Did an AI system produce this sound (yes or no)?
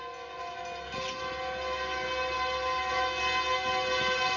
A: no